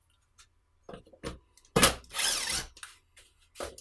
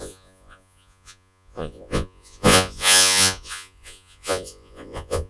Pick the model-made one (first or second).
second